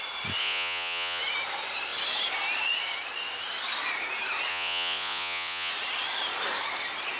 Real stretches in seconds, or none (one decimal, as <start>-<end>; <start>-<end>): 0.0-0.4; 1.2-4.5; 5.7-7.2